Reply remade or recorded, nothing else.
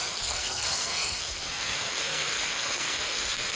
remade